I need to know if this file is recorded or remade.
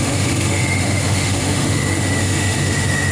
remade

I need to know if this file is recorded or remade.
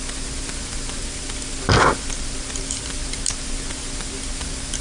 recorded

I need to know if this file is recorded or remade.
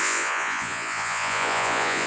remade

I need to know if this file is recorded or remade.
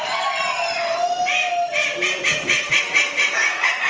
remade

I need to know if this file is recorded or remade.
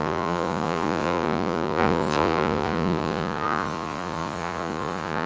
remade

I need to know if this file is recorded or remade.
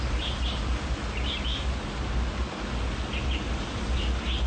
recorded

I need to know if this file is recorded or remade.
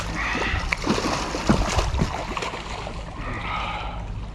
recorded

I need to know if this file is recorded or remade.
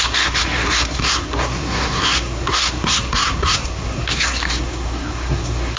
remade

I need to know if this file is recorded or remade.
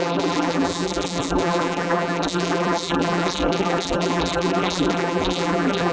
remade